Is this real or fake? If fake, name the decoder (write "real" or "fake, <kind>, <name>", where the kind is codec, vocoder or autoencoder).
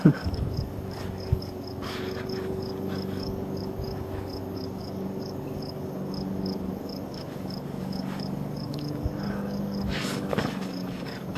fake, codec, DAC